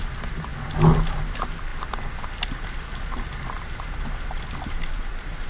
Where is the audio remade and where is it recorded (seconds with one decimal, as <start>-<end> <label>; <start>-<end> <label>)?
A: 0.0-5.5 recorded